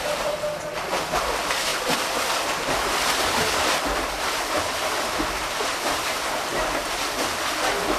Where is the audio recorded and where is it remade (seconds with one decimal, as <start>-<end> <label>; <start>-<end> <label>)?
0.0-6.5 remade; 6.5-8.0 recorded